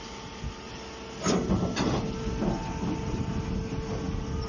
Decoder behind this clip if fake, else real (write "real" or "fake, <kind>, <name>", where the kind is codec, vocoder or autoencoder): real